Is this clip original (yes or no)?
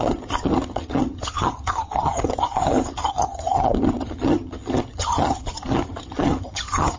no